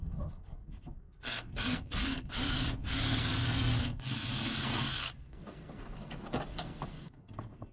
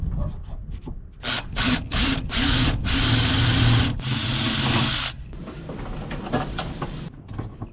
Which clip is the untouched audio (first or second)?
second